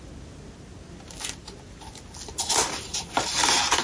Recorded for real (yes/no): yes